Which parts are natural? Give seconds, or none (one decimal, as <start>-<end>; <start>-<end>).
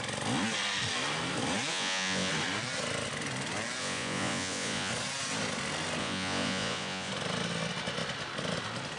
0.0-1.7; 2.3-3.8; 4.9-6.0; 7.1-9.0